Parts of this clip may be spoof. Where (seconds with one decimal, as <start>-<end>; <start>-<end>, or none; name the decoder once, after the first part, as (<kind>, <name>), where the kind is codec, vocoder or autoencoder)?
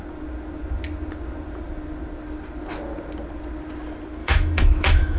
4.2-5.2 (autoencoder, DAC-VAE)